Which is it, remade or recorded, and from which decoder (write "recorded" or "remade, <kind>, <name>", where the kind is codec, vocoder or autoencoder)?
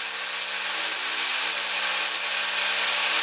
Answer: recorded